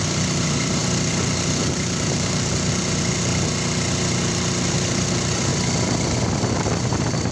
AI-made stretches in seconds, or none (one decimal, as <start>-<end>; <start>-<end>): 0.0-3.3; 4.2-5.5; 6.4-7.3